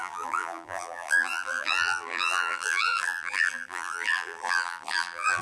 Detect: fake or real fake